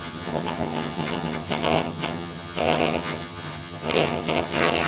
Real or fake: fake